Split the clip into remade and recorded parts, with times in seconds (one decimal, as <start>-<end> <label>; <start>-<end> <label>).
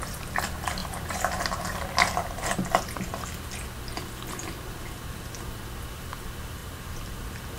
0.0-0.8 recorded; 0.8-2.5 remade; 2.5-6.6 recorded; 6.6-7.6 remade